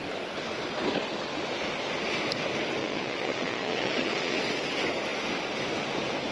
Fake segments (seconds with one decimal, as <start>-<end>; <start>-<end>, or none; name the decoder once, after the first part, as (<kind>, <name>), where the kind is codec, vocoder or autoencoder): 2.8-4.4 (vocoder, Vocos)